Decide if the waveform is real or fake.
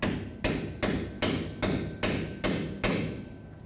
real